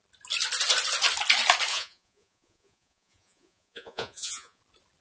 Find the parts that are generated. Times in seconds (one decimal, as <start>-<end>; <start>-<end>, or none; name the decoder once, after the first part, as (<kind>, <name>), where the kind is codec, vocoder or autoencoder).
1.7-4.6 (vocoder, Vocos)